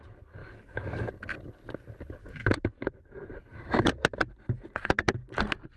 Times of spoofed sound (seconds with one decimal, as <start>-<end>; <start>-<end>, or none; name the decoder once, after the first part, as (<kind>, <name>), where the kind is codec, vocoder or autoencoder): 0.4-1.1 (autoencoder, DAC-VAE); 2.2-2.9; 3.5-4.2